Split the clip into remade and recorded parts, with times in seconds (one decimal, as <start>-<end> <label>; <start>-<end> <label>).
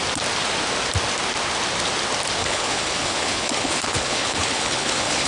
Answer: 0.0-2.4 recorded; 2.4-5.3 remade